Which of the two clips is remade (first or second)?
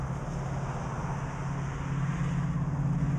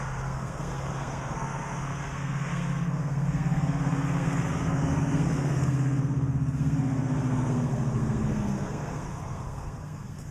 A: second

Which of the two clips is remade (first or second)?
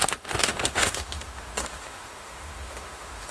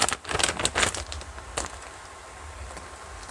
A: first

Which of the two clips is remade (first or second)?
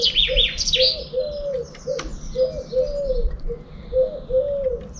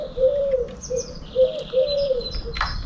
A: second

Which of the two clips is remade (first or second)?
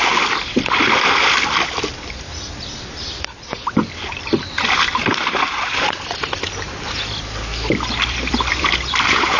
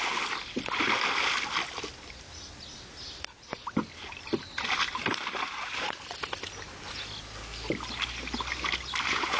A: first